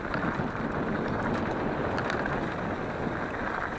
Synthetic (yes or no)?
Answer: no